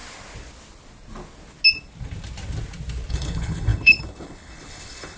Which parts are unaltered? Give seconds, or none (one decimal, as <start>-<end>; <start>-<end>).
0.0-3.1